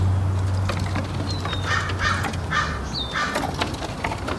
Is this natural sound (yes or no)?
yes